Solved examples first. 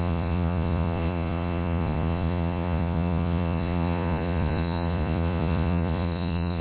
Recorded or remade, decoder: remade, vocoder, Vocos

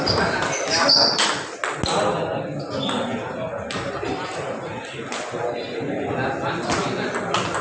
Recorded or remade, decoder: recorded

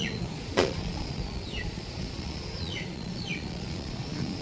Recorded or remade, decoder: remade, vocoder, Vocos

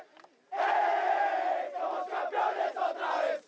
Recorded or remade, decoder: recorded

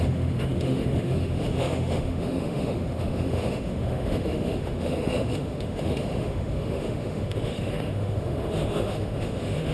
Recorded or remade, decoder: remade, autoencoder, DAC-VAE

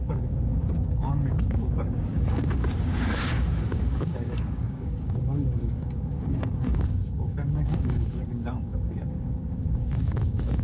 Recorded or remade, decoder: remade, codec, DAC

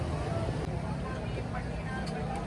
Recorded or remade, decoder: recorded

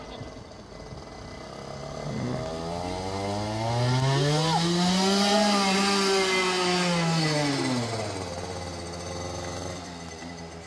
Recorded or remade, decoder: recorded